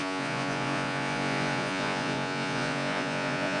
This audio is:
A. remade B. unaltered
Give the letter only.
A